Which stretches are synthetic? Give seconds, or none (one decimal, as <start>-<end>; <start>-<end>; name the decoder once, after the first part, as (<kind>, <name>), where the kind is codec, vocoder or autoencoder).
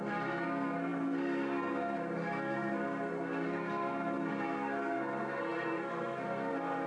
0.0-6.9 (codec, SNAC)